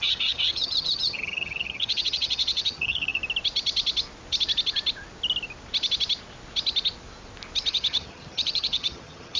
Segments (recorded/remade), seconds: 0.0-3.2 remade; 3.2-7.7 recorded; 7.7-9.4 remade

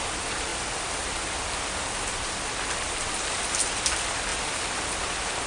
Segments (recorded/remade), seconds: 0.0-5.5 recorded

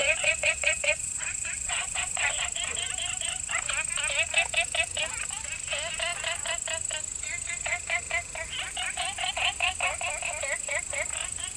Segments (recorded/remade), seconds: 0.0-2.4 remade; 2.4-11.6 recorded

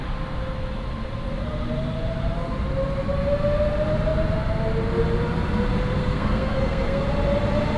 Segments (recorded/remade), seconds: 0.0-6.0 recorded; 6.0-7.0 remade; 7.0-7.8 recorded

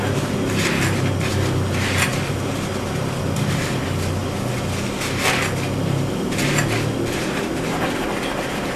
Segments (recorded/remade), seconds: 0.0-2.1 recorded; 2.1-3.1 remade; 3.1-8.8 recorded

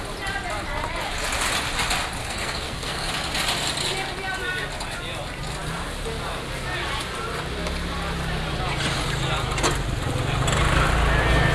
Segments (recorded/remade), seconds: 0.0-2.2 recorded; 2.2-3.1 remade; 3.1-11.5 recorded